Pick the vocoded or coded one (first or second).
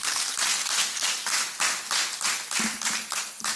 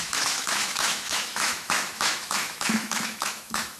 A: second